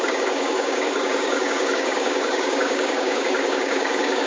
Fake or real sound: fake